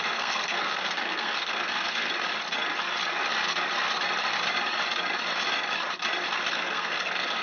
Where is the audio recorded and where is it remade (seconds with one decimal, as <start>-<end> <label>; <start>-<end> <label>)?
0.0-2.1 remade; 2.1-6.5 recorded; 6.5-7.4 remade